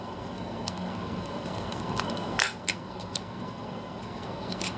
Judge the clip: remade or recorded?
remade